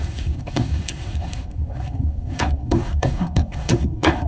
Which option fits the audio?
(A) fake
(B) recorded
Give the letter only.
A